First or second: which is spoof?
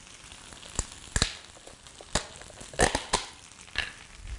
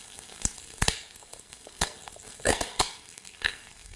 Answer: second